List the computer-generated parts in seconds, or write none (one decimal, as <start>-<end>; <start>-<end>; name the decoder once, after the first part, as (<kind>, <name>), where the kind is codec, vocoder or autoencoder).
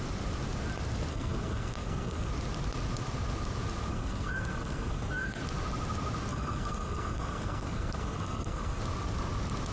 1.1-2.3 (codec, SNAC); 3.9-5.4; 6.3-8.8